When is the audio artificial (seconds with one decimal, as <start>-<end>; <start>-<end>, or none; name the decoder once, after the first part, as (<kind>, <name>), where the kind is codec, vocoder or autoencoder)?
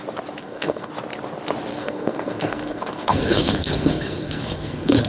0.4-0.9 (codec, SNAC); 1.7-5.1